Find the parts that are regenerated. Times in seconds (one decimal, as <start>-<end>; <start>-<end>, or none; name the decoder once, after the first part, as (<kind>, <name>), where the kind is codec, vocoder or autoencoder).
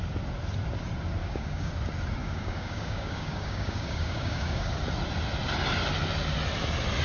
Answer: 1.2-1.7 (codec, DAC); 2.2-4.7